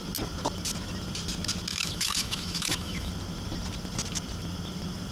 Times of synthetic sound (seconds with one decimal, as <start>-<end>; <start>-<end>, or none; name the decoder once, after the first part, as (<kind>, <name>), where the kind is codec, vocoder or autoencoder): 1.7-3.1 (autoencoder, DAC-VAE)

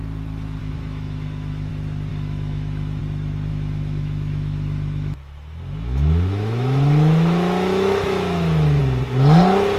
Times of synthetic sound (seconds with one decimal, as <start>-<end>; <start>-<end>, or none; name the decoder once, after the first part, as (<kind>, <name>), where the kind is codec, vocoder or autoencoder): 0.6-1.7 (autoencoder, DAC-VAE); 2.1-3.0; 3.5-8.8

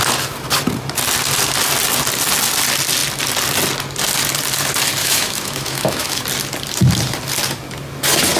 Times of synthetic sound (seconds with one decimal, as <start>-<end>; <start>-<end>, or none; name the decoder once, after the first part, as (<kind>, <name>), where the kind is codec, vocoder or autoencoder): 5.0-6.2 (autoencoder, DAC-VAE)

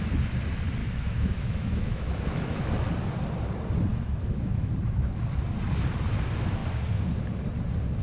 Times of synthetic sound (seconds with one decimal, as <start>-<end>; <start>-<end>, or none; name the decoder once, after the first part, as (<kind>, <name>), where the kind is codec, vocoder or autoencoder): 0.8-2.7 (autoencoder, DAC-VAE); 3.9-4.7

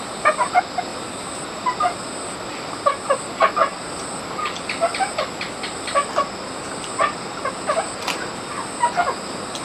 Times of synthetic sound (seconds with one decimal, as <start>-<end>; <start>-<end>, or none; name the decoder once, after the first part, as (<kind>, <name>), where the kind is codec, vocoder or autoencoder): none